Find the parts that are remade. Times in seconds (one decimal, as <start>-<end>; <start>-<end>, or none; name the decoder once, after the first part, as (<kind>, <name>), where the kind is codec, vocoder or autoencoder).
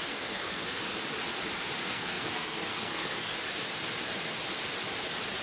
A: 0.0-0.8 (codec, SNAC); 1.8-3.3